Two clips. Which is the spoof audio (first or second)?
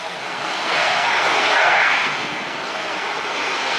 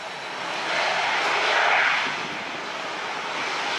first